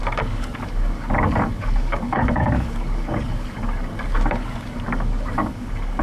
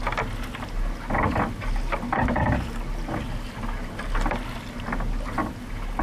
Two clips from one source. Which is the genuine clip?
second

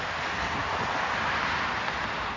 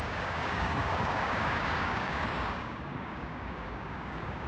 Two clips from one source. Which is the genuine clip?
first